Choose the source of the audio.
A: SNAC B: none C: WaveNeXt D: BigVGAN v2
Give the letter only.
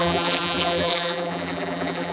D